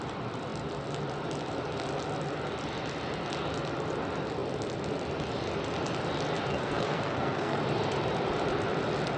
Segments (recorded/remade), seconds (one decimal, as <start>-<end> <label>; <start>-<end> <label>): 0.0-6.5 recorded; 6.5-7.6 remade; 7.6-9.2 recorded